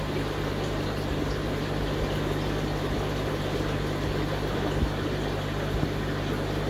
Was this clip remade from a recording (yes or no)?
no